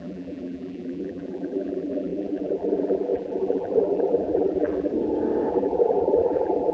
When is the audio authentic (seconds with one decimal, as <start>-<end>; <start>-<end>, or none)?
4.9-5.5